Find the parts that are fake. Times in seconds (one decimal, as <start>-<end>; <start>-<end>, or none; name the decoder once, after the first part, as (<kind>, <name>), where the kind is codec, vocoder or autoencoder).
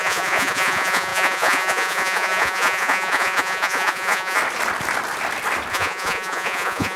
0.0-4.4 (vocoder, Vocos); 5.7-7.0